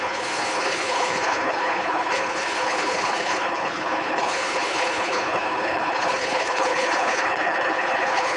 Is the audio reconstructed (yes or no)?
yes